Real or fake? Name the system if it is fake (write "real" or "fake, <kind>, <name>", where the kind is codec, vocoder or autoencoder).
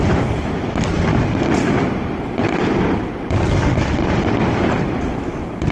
real